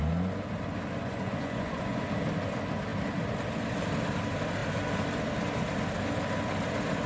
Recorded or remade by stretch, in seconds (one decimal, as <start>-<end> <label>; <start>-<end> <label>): 0.0-1.0 recorded; 1.0-2.0 remade; 2.0-7.1 recorded